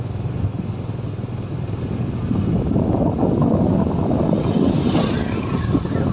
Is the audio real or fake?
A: real